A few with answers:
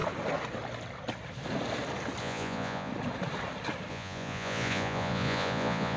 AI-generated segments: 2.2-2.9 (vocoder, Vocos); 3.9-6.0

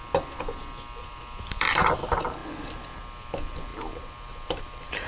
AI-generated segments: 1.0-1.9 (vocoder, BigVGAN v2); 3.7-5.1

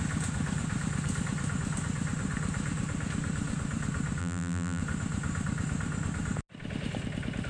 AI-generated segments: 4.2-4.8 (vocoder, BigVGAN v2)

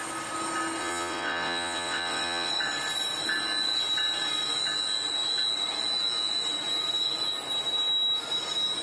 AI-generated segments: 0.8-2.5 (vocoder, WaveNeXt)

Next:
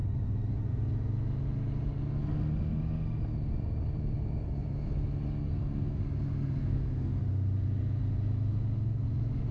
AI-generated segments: 5.4-6.0 (codec, SNAC); 6.6-7.2

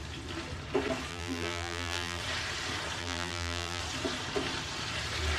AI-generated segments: 1.1-2.2 (vocoder, BigVGAN v2); 3.0-3.8

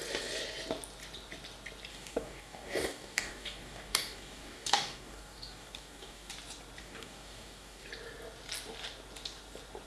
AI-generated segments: 1.9-6.3 (codec, DAC); 6.8-7.9

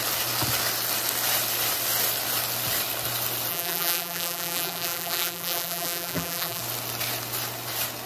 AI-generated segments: 3.5-6.6 (vocoder, BigVGAN v2)